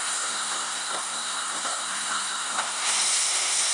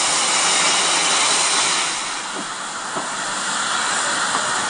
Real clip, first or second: second